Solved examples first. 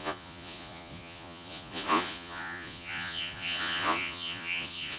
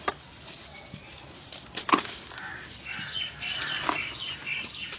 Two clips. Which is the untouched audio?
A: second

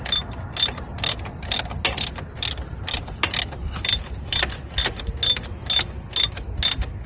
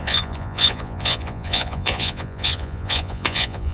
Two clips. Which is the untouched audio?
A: first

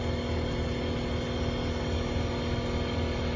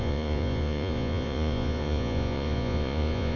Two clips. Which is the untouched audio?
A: first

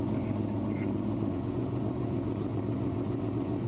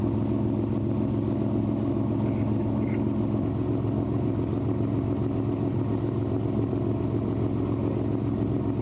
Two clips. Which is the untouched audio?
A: second